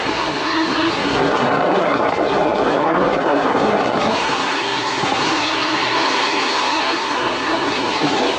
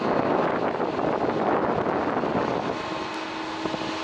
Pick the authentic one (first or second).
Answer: second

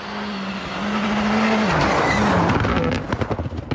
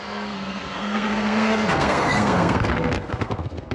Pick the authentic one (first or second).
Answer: first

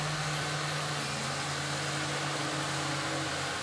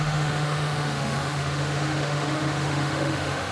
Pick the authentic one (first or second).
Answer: first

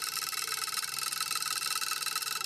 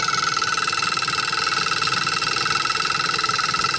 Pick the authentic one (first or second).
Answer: second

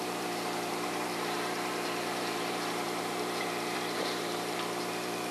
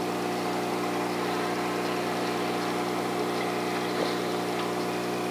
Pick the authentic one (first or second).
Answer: second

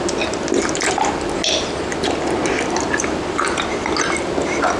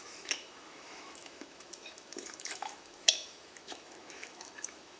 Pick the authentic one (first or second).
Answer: first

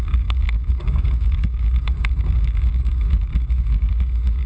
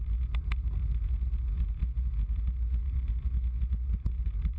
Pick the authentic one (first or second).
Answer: second